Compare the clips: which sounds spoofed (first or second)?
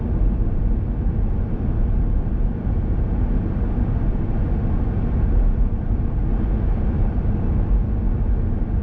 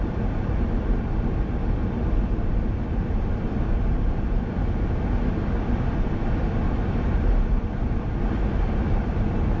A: second